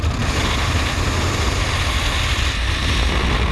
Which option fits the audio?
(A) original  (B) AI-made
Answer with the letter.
A